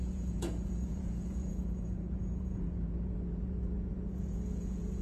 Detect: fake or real fake